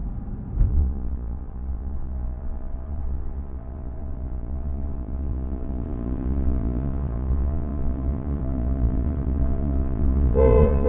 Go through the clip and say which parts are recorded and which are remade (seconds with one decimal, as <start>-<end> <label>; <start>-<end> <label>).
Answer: 0.0-0.7 recorded; 0.7-10.9 remade